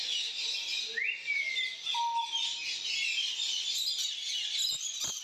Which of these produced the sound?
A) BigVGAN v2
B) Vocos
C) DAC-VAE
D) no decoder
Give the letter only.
D